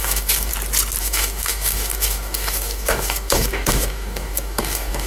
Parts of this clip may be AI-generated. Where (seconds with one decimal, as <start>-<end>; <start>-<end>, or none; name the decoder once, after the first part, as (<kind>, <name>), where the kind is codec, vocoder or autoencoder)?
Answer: 0.0-0.5 (codec, DAC); 1.0-5.1